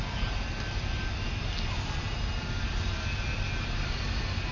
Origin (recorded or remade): recorded